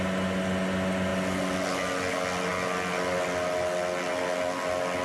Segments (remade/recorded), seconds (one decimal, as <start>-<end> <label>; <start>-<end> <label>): 0.0-5.0 recorded